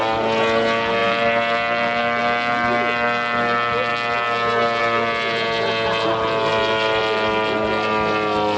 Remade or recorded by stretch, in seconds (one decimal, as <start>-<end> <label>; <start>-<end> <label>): 0.0-1.0 recorded; 1.0-2.2 remade; 2.2-6.5 recorded; 6.5-7.0 remade; 7.0-8.6 recorded

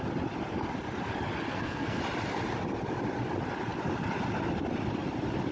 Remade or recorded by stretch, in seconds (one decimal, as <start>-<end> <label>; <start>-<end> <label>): 0.0-1.5 recorded; 1.5-2.0 remade; 2.0-5.5 recorded

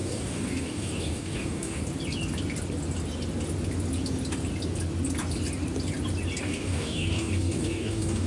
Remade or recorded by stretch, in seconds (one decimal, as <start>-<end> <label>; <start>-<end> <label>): 0.0-1.8 remade; 1.8-6.4 recorded; 6.4-8.3 remade

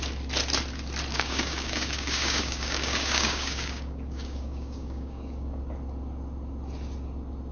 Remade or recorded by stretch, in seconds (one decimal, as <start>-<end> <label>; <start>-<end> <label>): 0.0-1.1 recorded; 1.1-5.6 remade; 5.6-7.5 recorded

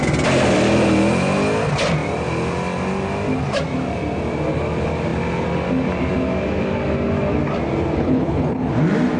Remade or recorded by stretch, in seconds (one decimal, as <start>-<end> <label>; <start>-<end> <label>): 0.0-8.0 recorded; 8.0-8.7 remade; 8.7-9.2 recorded